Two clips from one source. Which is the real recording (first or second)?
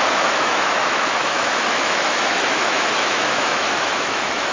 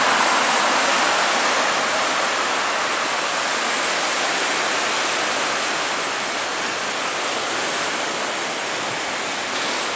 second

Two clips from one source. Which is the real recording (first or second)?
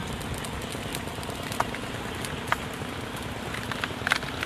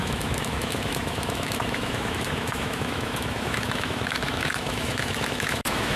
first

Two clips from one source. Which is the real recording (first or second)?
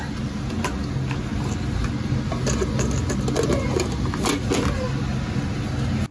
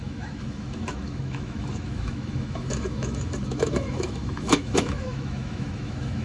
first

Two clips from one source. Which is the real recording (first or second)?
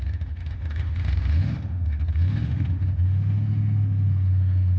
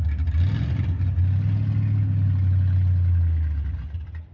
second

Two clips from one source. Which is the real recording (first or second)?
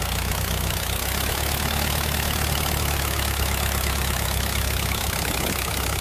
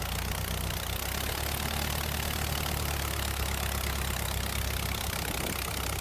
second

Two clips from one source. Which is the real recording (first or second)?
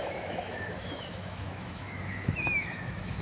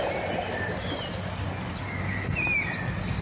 second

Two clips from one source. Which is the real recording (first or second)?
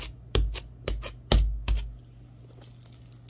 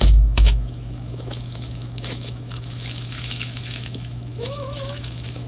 first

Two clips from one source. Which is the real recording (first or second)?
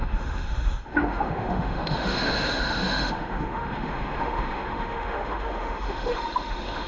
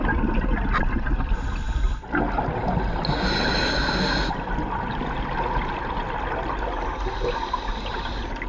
second